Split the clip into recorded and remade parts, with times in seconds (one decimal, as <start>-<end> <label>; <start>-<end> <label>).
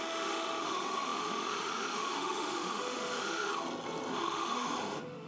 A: 0.0-3.5 remade; 3.5-4.1 recorded; 4.1-5.3 remade